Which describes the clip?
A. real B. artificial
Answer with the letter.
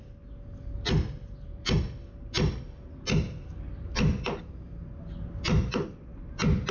A